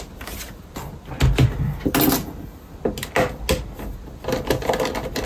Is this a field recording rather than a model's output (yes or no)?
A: yes